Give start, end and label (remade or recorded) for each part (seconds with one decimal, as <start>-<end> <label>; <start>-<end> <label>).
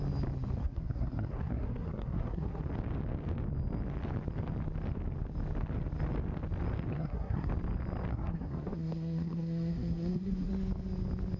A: 0.0-0.6 recorded; 0.6-2.6 remade; 2.6-6.9 recorded; 6.9-7.5 remade; 7.5-8.1 recorded; 8.1-10.5 remade; 10.5-11.4 recorded